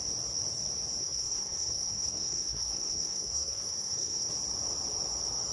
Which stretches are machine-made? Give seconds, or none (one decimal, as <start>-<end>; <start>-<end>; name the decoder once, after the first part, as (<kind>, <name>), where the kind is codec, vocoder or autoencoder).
1.0-4.3 (codec, SNAC)